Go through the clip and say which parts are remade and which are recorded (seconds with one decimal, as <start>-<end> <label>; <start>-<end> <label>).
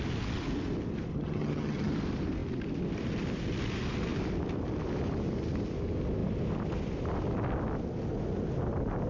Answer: 0.0-1.1 recorded; 1.1-1.9 remade; 1.9-9.1 recorded